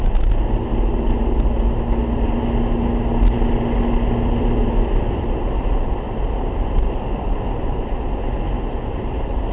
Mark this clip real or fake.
real